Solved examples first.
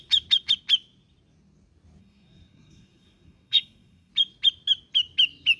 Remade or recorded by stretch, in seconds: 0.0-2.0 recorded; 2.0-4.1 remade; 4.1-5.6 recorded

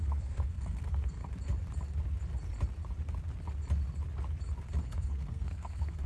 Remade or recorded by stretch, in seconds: 0.0-1.2 remade; 1.2-4.9 recorded; 4.9-6.1 remade

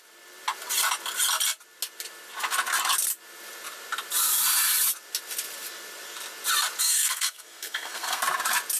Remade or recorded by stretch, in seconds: 0.0-6.8 recorded; 6.8-8.2 remade; 8.2-8.8 recorded

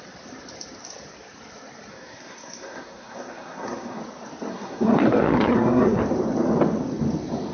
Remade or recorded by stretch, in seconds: 0.0-1.9 recorded; 1.9-4.0 remade; 4.0-4.5 recorded; 4.5-6.0 remade; 6.0-7.5 recorded

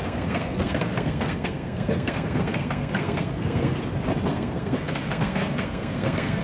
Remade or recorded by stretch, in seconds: 0.0-3.8 remade; 3.8-4.3 recorded; 4.3-6.4 remade

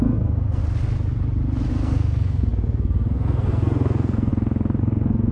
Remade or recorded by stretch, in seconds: 0.0-0.6 remade; 0.6-1.7 recorded; 1.7-4.3 remade; 4.3-4.8 recorded; 4.8-5.3 remade